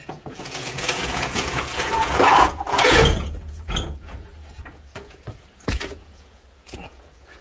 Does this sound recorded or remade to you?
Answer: remade